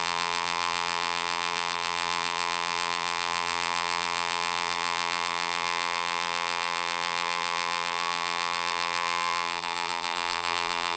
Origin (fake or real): fake